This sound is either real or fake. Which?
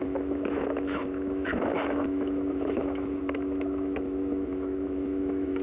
fake